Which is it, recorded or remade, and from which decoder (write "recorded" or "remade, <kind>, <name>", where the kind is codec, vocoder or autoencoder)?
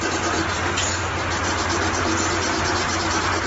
recorded